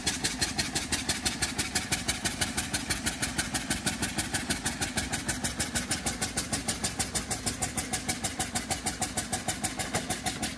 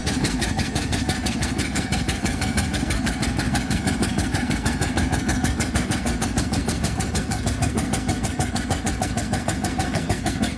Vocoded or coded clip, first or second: second